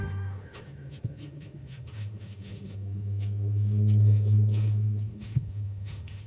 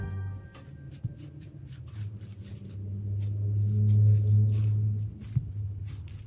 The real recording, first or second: second